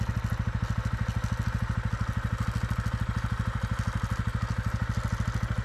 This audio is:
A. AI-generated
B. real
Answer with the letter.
B